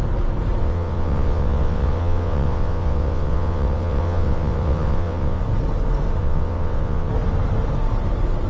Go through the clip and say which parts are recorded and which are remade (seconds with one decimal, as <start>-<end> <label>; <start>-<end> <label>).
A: 0.0-0.6 recorded; 0.6-5.4 remade; 5.4-6.2 recorded; 6.2-7.1 remade; 7.1-8.5 recorded